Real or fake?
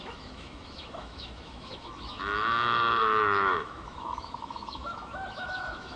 fake